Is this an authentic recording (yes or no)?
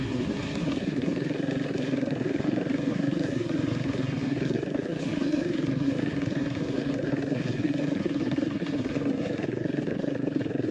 no